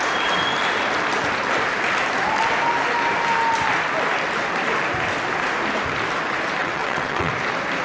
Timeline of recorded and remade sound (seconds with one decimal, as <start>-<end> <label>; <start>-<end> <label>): 0.0-6.6 recorded; 6.6-7.3 remade; 7.3-7.8 recorded